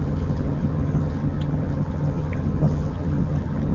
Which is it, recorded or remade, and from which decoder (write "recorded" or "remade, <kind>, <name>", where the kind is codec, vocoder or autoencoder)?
remade, vocoder, HiFi-GAN